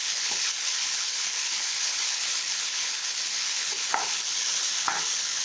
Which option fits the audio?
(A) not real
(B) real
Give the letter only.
A